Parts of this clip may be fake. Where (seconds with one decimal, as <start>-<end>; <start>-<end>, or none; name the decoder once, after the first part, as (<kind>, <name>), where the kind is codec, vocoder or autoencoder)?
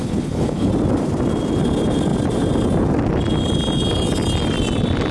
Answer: 0.0-0.7 (codec, HILCodec)